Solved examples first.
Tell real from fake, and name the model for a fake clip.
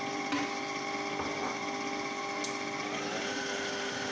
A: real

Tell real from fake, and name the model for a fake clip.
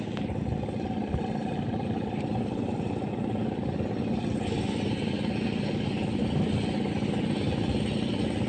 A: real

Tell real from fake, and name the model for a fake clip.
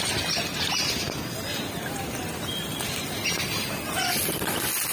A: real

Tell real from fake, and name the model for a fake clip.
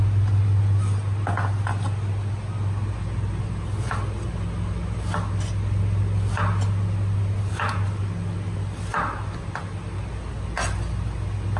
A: real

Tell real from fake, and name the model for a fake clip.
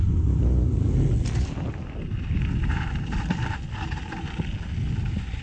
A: real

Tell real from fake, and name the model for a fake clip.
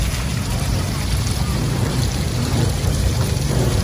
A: fake, vocoder, BigVGAN v2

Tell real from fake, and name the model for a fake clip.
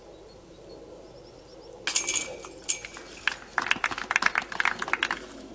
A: real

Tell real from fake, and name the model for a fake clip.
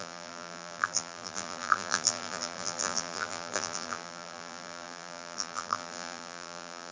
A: fake, vocoder, BigVGAN v2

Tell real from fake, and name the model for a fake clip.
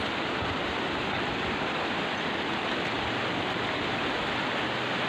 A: real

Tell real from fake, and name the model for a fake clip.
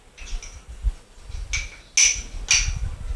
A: real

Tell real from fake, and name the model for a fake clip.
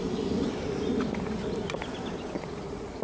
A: real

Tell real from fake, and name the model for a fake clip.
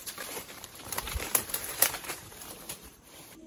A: fake, vocoder, BigVGAN v2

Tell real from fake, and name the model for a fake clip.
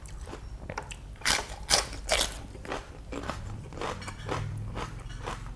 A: fake, vocoder, BigVGAN v2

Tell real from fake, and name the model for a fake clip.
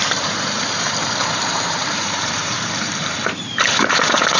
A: fake, vocoder, BigVGAN v2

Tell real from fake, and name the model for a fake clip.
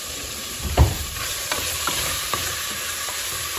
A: fake, vocoder, BigVGAN v2